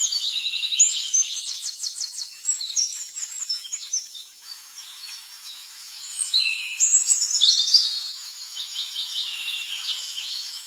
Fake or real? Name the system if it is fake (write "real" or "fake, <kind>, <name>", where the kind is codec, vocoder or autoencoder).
fake, autoencoder, DAC-VAE